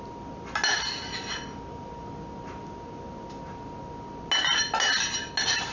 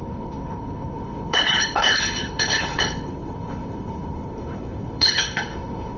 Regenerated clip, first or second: second